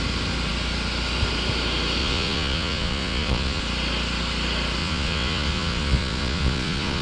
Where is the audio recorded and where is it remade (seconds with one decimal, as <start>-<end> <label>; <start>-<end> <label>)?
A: 0.0-2.0 recorded; 2.0-3.6 remade; 3.6-4.8 recorded; 4.8-7.0 remade